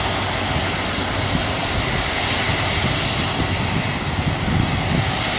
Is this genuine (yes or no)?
yes